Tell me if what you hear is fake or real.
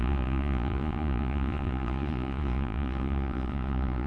fake